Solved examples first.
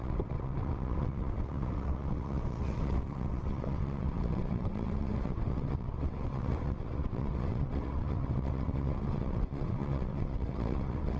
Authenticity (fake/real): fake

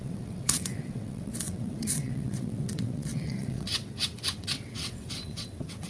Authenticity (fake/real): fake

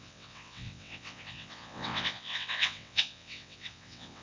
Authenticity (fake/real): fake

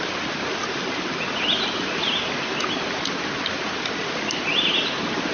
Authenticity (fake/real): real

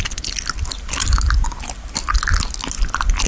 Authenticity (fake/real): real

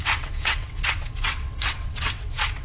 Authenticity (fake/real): fake